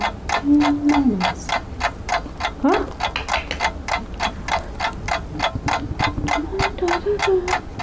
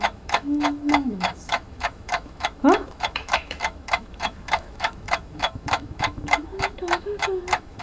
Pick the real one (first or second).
first